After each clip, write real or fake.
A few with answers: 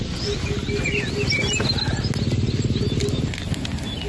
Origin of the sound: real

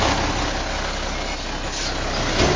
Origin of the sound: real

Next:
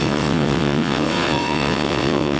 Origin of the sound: fake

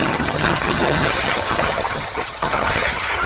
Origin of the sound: fake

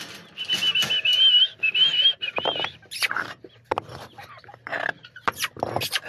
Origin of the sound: real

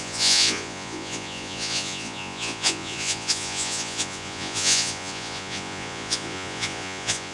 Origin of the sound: fake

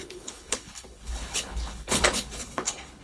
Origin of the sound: fake